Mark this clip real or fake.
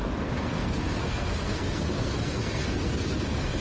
fake